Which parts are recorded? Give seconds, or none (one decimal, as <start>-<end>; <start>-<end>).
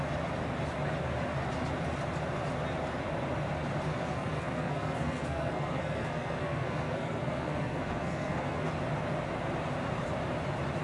0.0-3.9; 8.7-10.8